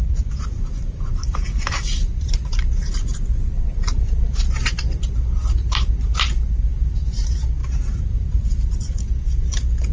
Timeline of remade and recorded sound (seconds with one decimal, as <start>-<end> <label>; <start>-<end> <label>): 0.0-3.1 remade; 3.1-3.7 recorded; 3.7-9.9 remade